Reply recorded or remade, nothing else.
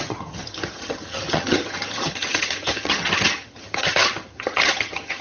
remade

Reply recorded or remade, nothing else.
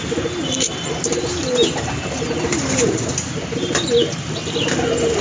recorded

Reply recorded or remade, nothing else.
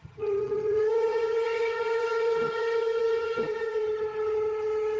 remade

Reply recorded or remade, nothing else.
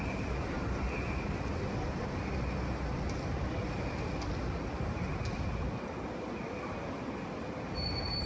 recorded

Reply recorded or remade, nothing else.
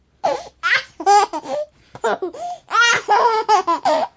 recorded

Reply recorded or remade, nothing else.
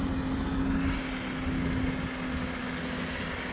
recorded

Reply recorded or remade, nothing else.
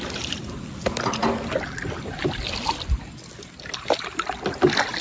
recorded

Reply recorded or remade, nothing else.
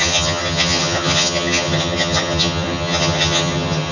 remade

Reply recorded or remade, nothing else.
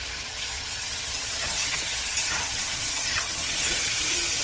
remade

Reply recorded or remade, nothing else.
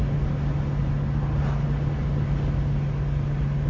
recorded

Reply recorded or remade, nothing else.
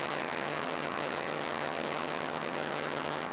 remade